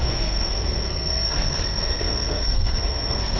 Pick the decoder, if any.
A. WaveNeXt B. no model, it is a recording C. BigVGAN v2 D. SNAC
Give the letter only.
D